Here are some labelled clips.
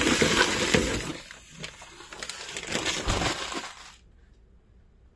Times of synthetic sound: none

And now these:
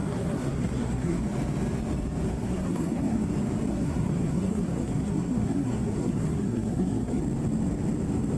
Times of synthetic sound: 0.0-1.2; 2.3-3.2; 3.7-7.2

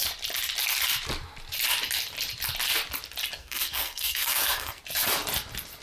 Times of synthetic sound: 3.4-4.8

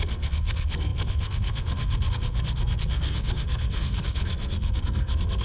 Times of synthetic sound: 0.0-5.4